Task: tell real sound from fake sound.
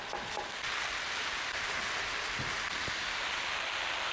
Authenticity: fake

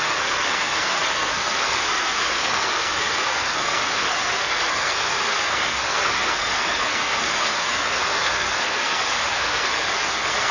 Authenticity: fake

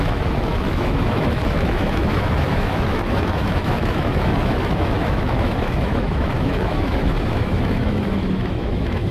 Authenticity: fake